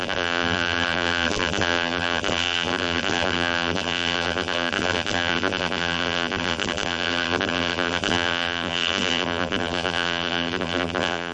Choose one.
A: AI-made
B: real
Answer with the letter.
A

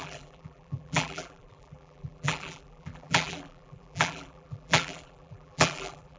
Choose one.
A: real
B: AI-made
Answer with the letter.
B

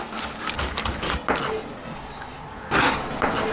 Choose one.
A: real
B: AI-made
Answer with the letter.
A